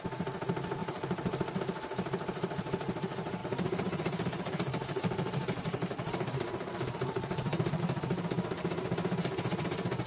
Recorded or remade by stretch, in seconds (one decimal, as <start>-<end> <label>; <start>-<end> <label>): 0.0-0.8 recorded; 0.8-1.6 remade; 1.6-3.4 recorded; 3.4-7.8 remade; 7.8-10.1 recorded